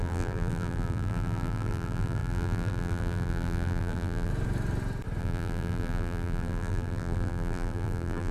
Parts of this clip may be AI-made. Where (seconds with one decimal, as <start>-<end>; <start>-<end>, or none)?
0.0-4.3; 5.2-8.3